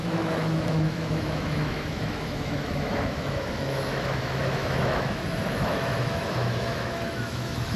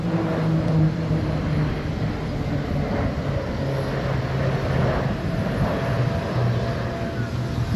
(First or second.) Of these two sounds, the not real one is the first